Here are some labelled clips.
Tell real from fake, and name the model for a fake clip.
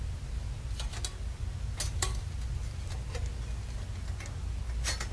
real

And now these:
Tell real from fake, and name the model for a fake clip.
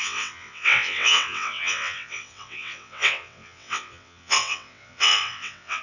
fake, vocoder, WaveNeXt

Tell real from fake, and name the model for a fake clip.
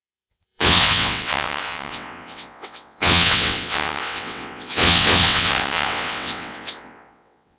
fake, vocoder, WaveNeXt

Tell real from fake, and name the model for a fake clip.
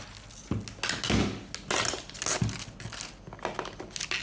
real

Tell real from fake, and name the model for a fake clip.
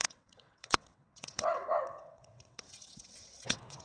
fake, vocoder, WaveNeXt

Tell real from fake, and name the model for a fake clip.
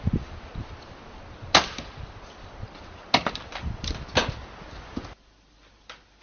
real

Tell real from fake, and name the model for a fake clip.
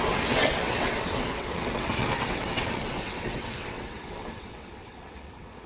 fake, vocoder, WaveNeXt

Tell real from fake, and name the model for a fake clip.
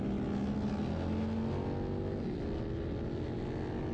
real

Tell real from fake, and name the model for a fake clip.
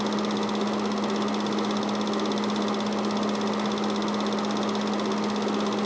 real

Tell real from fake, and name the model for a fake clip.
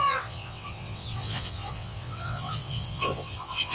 fake, vocoder, WaveNeXt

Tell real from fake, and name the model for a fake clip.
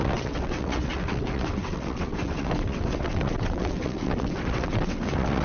fake, vocoder, WaveNeXt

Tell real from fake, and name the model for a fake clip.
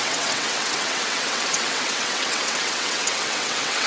fake, vocoder, WaveNeXt